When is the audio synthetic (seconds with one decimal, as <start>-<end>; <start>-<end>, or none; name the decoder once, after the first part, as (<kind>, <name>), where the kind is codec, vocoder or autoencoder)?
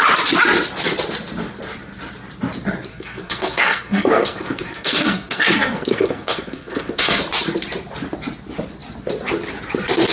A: 2.9-7.2 (codec, SNAC)